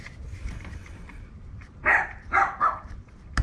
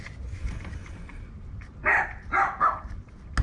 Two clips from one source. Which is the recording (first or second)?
second